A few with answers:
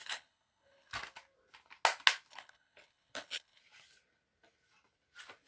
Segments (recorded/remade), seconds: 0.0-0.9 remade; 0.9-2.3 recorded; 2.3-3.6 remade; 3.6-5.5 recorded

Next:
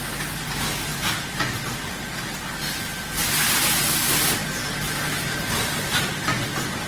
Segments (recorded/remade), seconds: 0.0-0.9 recorded; 0.9-1.6 remade; 1.6-2.5 recorded; 2.5-3.8 remade; 3.8-6.9 recorded